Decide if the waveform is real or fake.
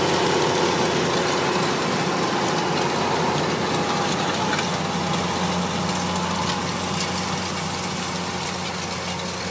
real